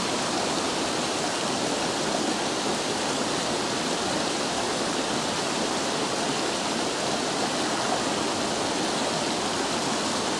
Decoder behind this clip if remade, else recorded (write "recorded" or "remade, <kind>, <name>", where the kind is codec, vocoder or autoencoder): recorded